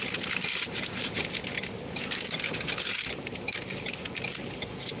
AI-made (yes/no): no